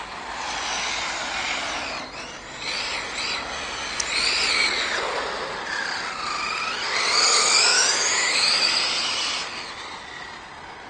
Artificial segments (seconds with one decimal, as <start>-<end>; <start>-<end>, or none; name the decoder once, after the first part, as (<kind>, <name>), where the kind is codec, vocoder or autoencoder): 7.7-8.8 (autoencoder, DAC-VAE)